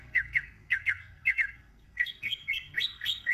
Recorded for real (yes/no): no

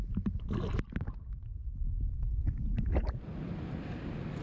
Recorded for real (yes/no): yes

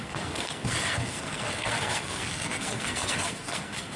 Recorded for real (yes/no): no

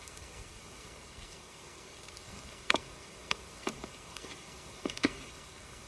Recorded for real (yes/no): no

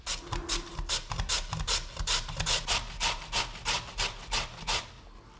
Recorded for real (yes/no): yes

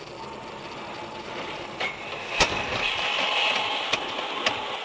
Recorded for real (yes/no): yes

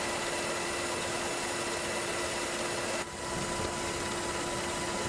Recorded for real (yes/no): yes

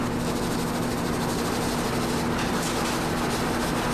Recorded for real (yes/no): yes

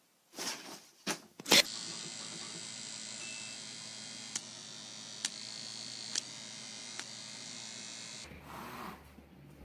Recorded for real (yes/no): yes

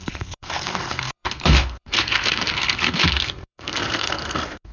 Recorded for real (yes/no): no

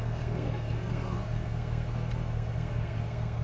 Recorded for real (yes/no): no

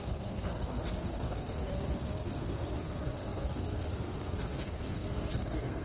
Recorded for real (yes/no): no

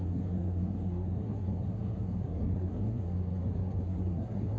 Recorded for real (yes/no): no